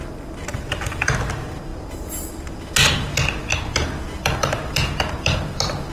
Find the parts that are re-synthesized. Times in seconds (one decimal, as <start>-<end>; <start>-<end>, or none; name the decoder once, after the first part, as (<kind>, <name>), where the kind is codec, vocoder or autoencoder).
0.5-1.1 (vocoder, BigVGAN v2)